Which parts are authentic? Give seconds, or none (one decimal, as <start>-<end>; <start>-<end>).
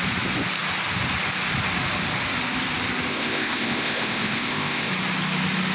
0.0-3.1; 4.9-5.7